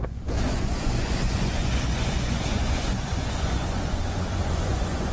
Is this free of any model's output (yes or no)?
no